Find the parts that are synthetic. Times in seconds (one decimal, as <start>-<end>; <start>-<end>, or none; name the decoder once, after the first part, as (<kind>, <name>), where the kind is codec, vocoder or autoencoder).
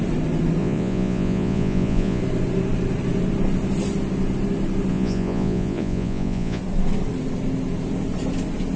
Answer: 0.6-2.2 (vocoder, Vocos); 4.9-6.6